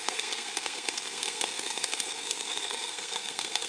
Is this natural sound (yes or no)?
no